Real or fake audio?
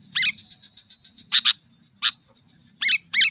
real